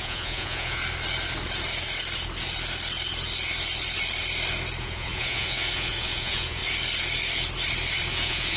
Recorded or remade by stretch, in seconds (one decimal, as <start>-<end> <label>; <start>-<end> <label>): 0.0-0.8 remade; 0.8-4.8 recorded; 4.8-6.6 remade; 6.6-8.1 recorded; 8.1-8.6 remade